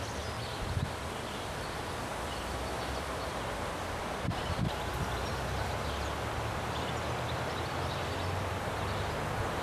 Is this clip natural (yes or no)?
yes